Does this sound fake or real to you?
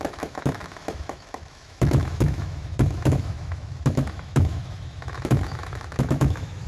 fake